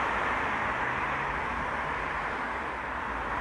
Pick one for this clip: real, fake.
real